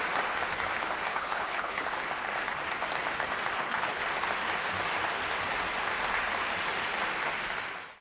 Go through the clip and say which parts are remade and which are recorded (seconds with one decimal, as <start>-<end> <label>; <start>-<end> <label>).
0.0-1.1 recorded; 1.1-1.8 remade; 1.8-3.5 recorded; 3.5-4.0 remade; 4.0-8.0 recorded